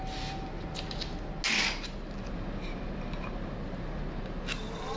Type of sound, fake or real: real